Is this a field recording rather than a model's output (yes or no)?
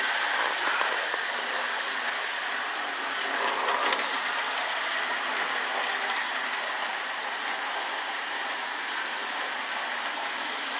yes